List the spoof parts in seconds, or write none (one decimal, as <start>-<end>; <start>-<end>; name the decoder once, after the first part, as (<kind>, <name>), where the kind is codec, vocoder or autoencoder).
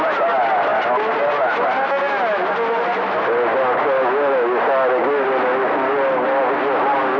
none